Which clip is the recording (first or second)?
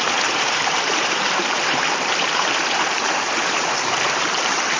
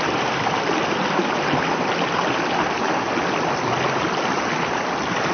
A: second